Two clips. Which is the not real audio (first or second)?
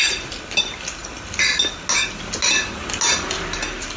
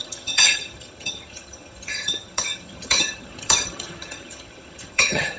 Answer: second